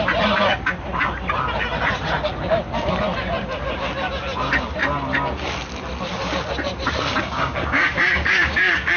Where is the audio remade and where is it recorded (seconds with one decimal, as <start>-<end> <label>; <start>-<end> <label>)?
0.0-7.1 recorded; 7.1-9.0 remade

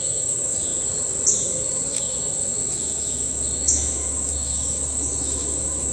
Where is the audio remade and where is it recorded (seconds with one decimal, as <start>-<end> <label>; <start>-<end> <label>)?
0.0-0.7 remade; 0.7-1.9 recorded; 1.9-5.9 remade

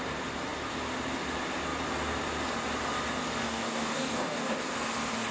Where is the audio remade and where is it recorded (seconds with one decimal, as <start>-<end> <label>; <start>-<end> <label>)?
0.0-3.4 recorded; 3.4-4.5 remade; 4.5-5.3 recorded

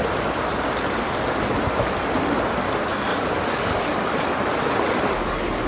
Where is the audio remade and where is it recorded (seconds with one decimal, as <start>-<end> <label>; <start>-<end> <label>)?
0.0-3.1 recorded; 3.1-4.1 remade; 4.1-5.7 recorded